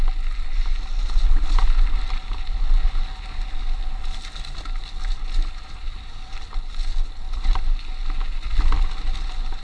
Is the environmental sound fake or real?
real